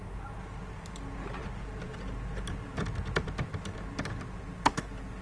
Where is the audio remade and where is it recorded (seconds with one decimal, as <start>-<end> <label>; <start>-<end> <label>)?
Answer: 0.0-5.2 recorded